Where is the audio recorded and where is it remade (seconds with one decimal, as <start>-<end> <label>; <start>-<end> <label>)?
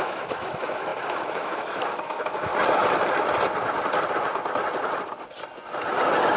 0.0-2.5 remade; 2.5-6.4 recorded